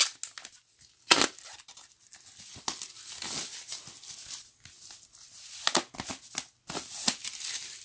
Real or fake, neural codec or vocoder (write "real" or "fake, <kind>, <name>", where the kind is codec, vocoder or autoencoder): real